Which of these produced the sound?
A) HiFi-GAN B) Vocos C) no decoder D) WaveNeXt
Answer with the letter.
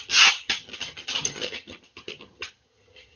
A